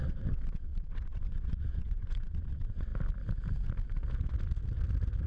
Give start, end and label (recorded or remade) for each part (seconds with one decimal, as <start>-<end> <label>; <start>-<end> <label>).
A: 0.0-2.9 remade; 2.9-5.3 recorded